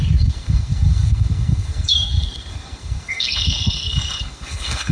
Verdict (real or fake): fake